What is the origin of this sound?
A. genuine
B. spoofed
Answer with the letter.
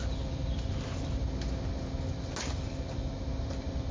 A